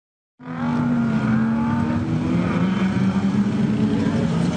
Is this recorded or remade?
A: recorded